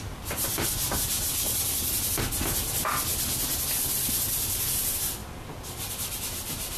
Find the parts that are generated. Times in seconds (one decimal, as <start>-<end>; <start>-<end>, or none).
none